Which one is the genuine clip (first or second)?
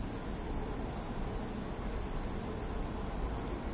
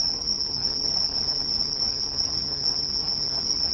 first